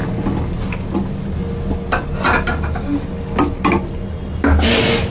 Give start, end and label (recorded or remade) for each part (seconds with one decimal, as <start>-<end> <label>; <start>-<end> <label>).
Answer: 0.0-5.1 recorded